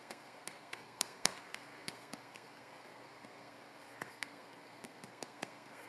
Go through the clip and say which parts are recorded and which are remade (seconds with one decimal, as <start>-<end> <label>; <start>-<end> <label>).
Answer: 0.0-5.9 remade